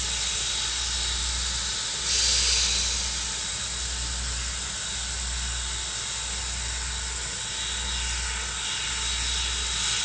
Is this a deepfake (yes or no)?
no